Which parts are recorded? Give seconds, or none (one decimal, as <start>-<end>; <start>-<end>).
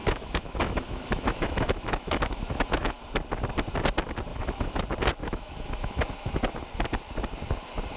3.0-4.3; 4.8-5.2; 6.4-8.0